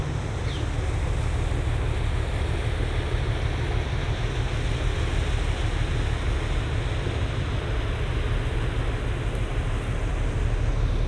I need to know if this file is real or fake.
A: real